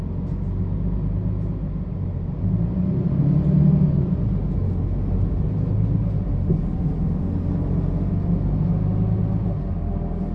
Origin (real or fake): real